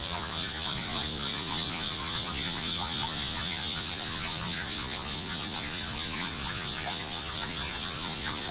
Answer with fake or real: fake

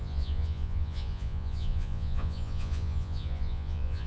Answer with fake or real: fake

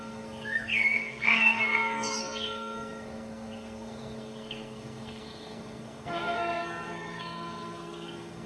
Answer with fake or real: fake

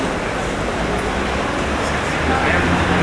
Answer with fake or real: real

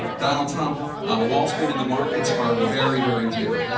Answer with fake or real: real